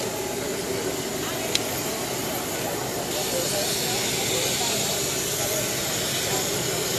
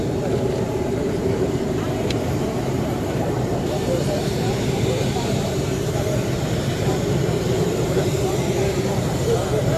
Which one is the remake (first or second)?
second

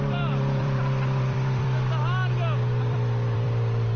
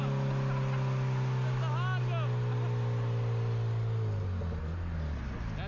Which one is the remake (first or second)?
first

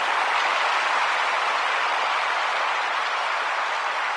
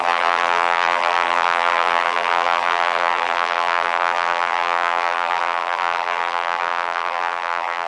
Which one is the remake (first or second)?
second